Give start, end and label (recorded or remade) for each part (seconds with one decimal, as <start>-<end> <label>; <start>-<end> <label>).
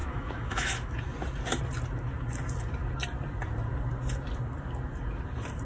0.0-1.0 remade; 1.0-5.7 recorded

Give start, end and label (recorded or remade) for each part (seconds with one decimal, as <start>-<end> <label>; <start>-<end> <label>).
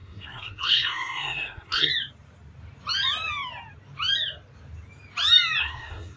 0.0-1.9 remade; 1.9-5.6 recorded; 5.6-6.2 remade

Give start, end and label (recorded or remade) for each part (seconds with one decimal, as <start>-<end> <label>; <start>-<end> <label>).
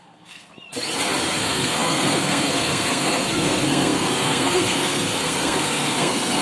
0.0-0.5 remade; 0.5-1.3 recorded; 1.3-6.4 remade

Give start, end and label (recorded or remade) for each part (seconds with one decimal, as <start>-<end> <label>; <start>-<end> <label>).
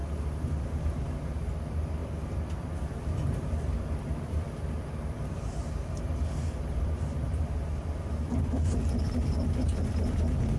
0.0-1.5 recorded; 1.5-10.6 remade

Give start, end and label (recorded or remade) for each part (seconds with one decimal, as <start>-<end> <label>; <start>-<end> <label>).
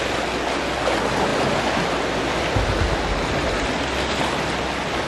0.0-5.1 recorded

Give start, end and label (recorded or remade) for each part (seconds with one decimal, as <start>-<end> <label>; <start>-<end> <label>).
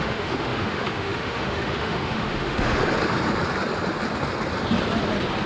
0.0-2.8 remade; 2.8-5.5 recorded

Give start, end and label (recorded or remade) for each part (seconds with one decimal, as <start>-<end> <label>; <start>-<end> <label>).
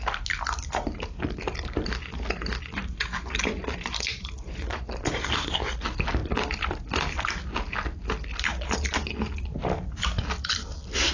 0.0-11.1 recorded